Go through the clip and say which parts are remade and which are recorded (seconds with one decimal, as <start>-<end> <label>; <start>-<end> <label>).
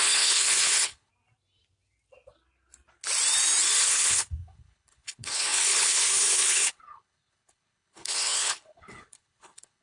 0.0-1.1 remade; 1.1-3.8 recorded; 3.8-9.8 remade